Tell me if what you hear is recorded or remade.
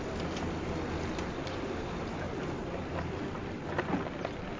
recorded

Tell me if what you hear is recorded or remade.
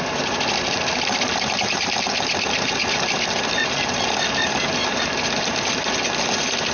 recorded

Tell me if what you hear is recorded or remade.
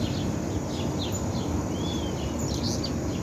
recorded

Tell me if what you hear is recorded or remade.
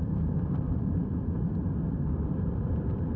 remade